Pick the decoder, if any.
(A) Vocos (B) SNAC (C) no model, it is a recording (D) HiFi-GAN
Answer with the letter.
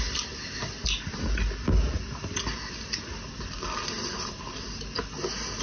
C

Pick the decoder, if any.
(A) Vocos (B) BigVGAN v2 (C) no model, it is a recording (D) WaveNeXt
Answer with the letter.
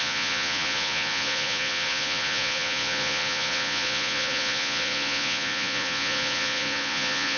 A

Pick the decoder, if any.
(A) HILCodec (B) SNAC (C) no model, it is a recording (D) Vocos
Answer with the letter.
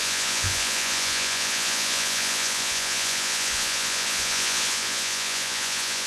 D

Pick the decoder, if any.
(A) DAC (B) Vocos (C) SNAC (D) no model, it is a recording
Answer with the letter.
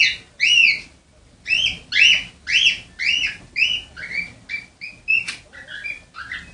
D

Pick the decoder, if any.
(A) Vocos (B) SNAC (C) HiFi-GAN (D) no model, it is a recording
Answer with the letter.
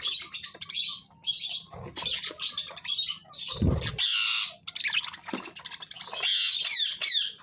D